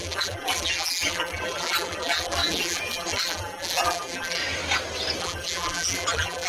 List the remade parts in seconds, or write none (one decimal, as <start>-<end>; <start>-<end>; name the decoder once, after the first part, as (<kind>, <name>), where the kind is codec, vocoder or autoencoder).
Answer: 0.0-4.4 (vocoder, BigVGAN v2); 5.2-6.5